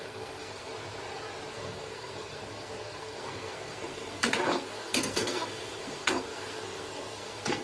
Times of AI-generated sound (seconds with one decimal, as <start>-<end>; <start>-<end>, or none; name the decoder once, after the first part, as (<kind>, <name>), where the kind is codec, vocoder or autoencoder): 0.0-0.7 (codec, SNAC); 1.5-7.6